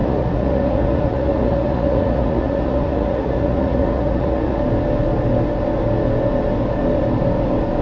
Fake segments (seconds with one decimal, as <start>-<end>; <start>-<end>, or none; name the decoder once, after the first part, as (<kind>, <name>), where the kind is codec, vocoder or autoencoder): 0.0-4.6 (vocoder, Vocos)